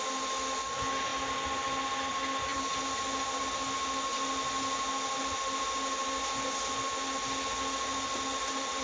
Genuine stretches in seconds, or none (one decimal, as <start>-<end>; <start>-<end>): 0.0-1.1; 2.1-2.5; 3.4-4.1; 5.6-8.8